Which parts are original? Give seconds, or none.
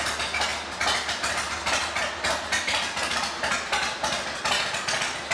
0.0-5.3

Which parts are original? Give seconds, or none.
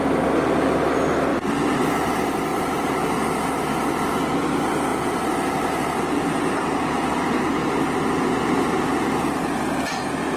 0.0-1.3; 1.8-2.5; 4.1-4.9; 6.6-10.4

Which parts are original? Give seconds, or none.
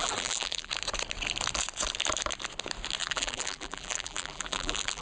0.7-3.0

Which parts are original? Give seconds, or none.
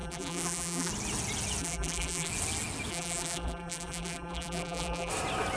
0.9-1.6; 2.3-2.9; 5.1-5.6